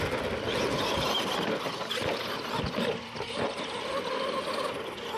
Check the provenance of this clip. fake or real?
real